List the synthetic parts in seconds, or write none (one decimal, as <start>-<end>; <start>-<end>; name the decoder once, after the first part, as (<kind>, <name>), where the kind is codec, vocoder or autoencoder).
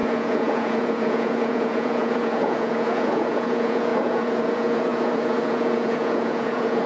0.0-6.9 (vocoder, Vocos)